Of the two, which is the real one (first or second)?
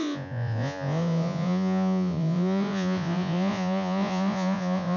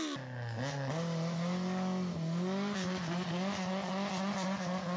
second